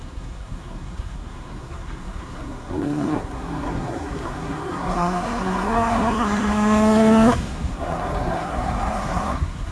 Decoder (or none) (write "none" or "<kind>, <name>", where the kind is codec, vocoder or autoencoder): codec, SNAC